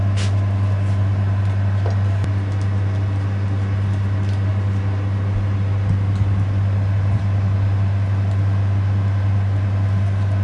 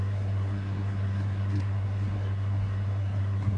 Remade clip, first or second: second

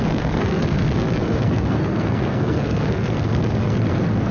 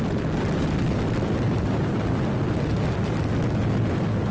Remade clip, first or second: first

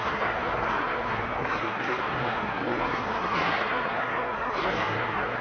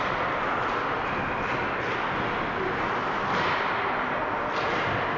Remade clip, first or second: first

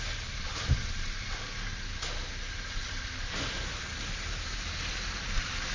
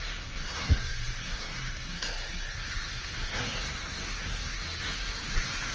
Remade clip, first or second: second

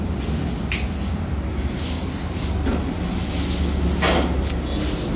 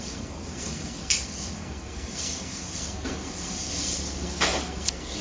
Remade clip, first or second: second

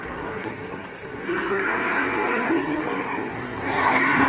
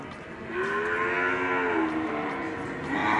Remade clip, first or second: first